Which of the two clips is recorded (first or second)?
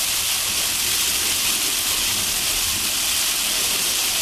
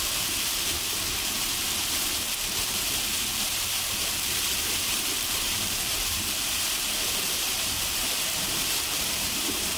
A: first